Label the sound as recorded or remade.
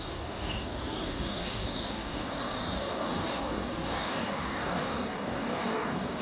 remade